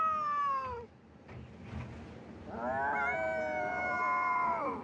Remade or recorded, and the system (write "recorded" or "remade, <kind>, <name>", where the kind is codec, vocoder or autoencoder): recorded